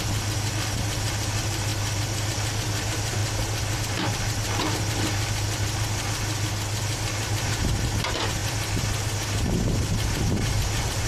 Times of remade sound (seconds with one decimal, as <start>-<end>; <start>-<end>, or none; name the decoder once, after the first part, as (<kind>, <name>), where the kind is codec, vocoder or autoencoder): none